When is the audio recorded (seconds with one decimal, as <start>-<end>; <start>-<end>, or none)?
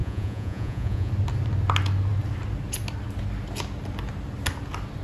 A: 1.1-5.0